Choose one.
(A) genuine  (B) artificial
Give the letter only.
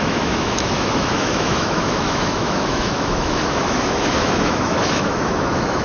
B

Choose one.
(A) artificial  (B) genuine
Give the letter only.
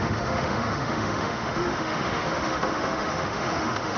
A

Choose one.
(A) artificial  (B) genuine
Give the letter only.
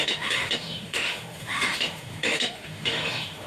A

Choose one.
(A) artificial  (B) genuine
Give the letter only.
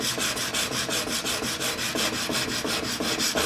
B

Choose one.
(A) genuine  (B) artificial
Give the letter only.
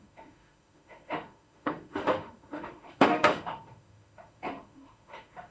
B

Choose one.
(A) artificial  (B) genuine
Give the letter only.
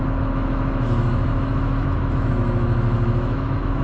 A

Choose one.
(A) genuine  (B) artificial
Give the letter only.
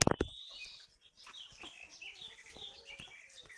A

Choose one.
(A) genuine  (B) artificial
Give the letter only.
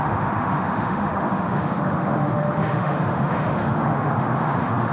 B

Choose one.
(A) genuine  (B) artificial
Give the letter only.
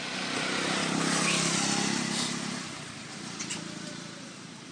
A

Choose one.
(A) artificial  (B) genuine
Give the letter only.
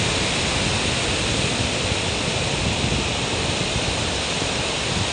B